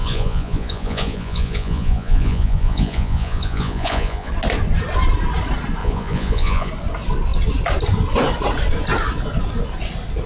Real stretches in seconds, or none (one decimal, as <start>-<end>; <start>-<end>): 4.3-5.8; 6.7-10.3